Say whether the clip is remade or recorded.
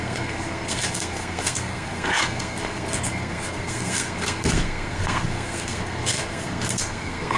remade